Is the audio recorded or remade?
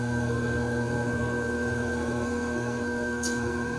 remade